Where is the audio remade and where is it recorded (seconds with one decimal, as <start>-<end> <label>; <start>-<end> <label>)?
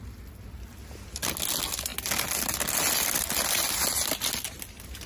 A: 0.0-5.1 recorded